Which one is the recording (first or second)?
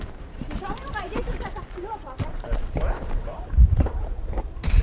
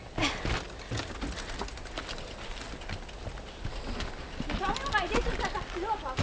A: second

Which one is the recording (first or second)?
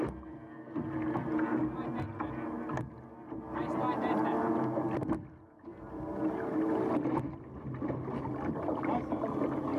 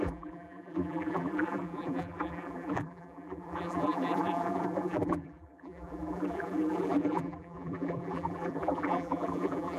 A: first